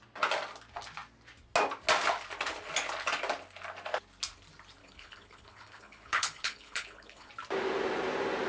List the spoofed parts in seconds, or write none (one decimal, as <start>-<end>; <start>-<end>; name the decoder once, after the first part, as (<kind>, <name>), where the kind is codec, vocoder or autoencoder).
4.8-7.3 (codec, HILCodec)